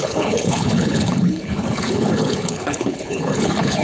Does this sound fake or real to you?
fake